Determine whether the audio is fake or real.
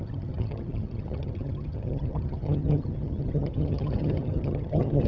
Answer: fake